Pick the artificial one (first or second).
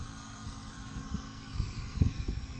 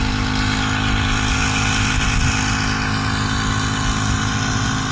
first